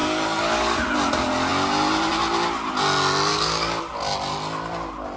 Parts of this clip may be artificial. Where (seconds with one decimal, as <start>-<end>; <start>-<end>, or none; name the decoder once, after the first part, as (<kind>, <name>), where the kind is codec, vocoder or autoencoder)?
0.0-0.7 (codec, DAC); 3.3-3.8